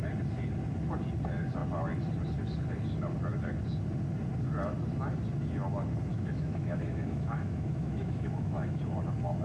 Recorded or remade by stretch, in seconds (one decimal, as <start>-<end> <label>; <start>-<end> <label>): 0.0-6.1 recorded; 6.1-8.8 remade; 8.8-9.4 recorded